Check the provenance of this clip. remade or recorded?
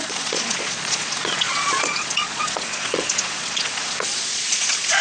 remade